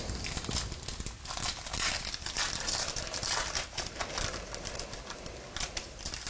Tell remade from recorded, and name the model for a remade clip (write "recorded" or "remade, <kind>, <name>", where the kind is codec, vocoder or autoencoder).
recorded